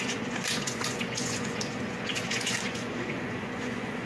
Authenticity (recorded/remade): remade